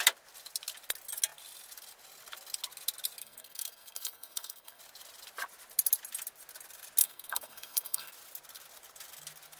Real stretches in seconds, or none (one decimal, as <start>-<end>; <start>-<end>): 0.0-3.2; 4.8-7.0; 8.1-9.6